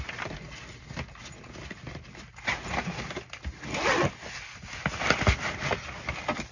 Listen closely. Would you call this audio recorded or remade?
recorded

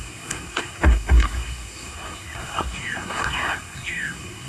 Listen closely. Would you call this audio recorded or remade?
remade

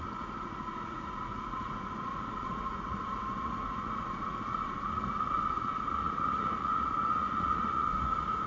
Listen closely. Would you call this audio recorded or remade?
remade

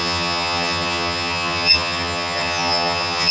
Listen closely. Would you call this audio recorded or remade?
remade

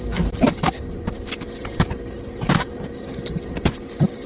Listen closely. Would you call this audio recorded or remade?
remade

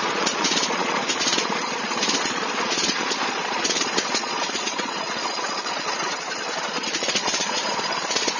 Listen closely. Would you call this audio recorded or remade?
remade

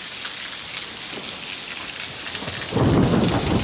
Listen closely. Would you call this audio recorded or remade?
recorded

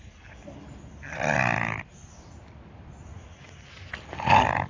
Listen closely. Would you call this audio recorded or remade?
recorded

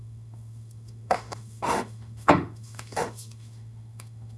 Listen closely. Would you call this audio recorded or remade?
remade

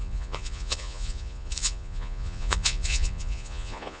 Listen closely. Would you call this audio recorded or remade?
remade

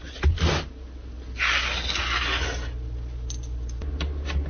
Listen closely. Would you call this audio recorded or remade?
recorded